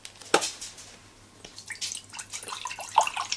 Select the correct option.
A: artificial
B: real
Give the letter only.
B